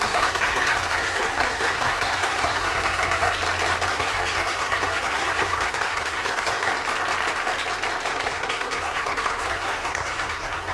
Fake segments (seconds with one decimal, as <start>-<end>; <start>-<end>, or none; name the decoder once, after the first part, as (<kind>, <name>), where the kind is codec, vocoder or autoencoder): 0.0-3.4 (codec, SNAC); 3.9-6.7; 8.1-10.7